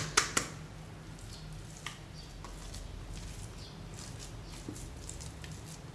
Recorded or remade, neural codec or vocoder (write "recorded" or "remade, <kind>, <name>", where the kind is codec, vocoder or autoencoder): recorded